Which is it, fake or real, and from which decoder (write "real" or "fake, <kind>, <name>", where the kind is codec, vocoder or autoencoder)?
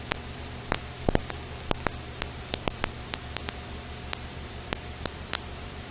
real